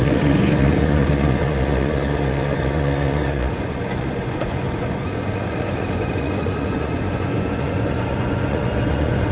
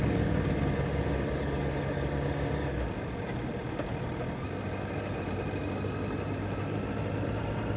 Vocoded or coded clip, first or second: first